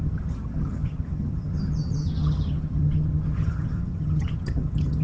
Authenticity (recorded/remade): remade